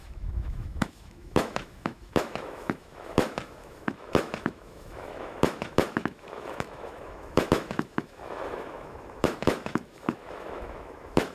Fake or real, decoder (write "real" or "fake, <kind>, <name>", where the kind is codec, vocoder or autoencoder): fake, autoencoder, DAC-VAE